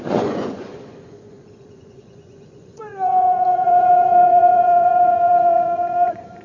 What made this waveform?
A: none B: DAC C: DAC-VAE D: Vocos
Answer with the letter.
D